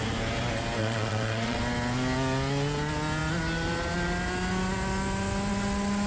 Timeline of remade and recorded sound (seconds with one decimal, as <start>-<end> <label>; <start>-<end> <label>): 0.0-0.8 recorded; 0.8-1.6 remade; 1.6-6.1 recorded